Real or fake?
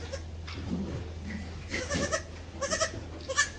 real